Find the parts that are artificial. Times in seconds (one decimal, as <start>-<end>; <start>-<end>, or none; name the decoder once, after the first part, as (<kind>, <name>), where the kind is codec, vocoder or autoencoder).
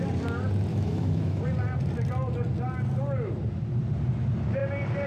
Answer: 0.7-1.4 (autoencoder, DAC-VAE)